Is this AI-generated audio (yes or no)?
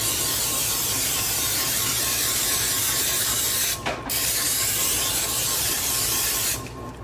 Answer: yes